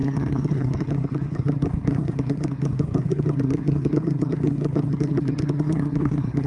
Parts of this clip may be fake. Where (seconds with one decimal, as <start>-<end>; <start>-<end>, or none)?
0.0-6.5